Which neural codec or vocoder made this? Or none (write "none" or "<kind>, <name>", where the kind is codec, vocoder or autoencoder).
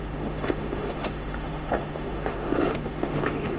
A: autoencoder, DAC-VAE